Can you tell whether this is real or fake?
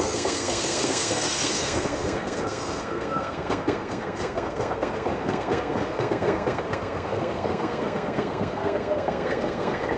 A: fake